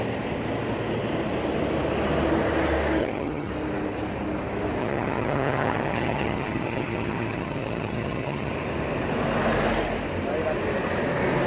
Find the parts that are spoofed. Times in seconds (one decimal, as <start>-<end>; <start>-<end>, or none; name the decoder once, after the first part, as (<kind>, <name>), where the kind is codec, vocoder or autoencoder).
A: 3.0-3.5 (vocoder, HiFi-GAN); 4.8-8.5

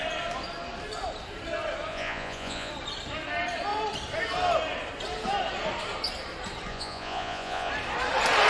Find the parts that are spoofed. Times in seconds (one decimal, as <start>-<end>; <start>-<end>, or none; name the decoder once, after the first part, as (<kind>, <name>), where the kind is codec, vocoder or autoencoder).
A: 1.9-2.7 (vocoder, Vocos); 6.7-7.7

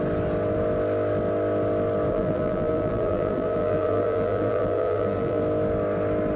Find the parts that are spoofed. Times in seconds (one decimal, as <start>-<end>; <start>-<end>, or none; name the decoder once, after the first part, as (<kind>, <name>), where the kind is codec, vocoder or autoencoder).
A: 2.1-5.4 (vocoder, BigVGAN v2)

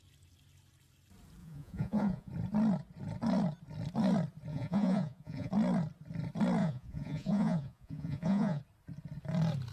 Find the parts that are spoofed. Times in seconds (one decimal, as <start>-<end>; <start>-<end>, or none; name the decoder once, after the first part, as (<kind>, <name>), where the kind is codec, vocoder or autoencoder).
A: 1.4-2.3 (vocoder, Vocos); 4.5-5.5; 6.6-8.6

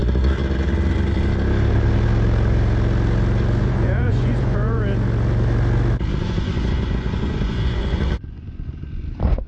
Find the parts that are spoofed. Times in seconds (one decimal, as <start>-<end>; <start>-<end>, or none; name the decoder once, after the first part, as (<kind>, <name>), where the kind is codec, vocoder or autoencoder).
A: 3.6-4.8 (vocoder, Vocos); 6.2-9.5

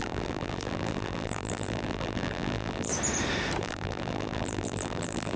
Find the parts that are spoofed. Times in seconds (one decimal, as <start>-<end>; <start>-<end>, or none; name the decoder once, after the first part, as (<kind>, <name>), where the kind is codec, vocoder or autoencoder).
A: 0.0-2.9 (vocoder, BigVGAN v2); 3.6-5.4

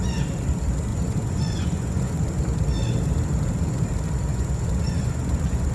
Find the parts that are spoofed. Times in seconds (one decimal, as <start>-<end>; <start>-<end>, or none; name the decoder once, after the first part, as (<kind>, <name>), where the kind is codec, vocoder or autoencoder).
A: 0.9-2.2 (vocoder, Vocos); 4.3-5.7

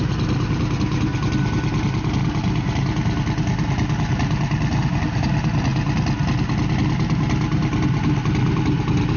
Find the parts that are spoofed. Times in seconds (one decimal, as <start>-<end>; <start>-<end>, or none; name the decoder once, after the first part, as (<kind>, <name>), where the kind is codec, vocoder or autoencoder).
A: 4.7-5.3 (vocoder, BigVGAN v2)